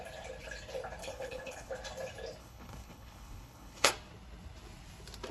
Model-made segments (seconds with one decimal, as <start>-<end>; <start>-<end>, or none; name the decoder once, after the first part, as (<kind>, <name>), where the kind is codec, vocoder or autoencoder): 1.0-1.7 (codec, HILCodec); 2.4-3.9

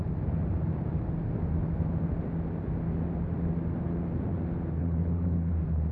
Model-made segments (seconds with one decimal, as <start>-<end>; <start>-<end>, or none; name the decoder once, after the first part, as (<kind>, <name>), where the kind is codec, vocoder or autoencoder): 4.8-5.5 (codec, HILCodec)

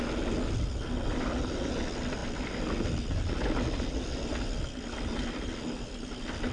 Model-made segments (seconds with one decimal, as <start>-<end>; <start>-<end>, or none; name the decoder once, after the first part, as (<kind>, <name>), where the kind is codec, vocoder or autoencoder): none

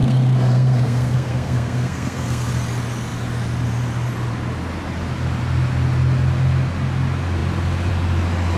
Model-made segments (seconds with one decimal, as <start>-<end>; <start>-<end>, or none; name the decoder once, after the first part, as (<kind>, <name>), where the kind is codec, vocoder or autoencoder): 0.0-2.5 (codec, SNAC)

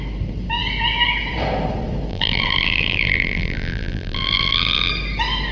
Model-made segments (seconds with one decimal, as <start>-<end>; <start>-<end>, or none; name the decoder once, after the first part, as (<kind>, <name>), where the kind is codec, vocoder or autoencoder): 2.1-4.9 (vocoder, BigVGAN v2)

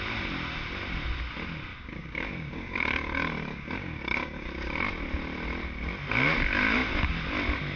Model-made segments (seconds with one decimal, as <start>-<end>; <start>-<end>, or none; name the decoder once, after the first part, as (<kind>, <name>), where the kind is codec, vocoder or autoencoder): 1.7-4.5 (codec, DAC)

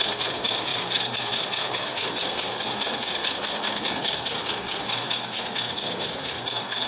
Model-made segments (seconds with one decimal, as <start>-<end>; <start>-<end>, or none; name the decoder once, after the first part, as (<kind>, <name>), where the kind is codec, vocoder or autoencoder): 0.0-6.9 (codec, SNAC)